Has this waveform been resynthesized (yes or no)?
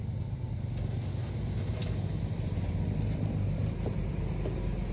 no